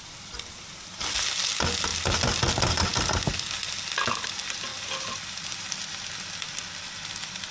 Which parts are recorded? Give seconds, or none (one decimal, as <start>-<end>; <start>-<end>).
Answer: 0.0-7.5